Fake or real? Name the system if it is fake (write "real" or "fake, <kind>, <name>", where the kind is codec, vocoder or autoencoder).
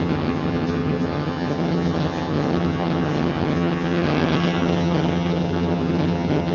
fake, vocoder, HiFi-GAN